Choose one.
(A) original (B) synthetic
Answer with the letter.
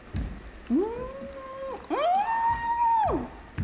A